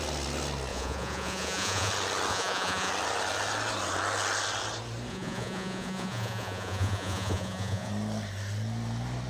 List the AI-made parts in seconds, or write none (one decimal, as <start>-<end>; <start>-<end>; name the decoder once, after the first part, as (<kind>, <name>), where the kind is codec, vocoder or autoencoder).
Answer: 0.7-1.9 (vocoder, Vocos); 2.3-2.9; 5.1-7.9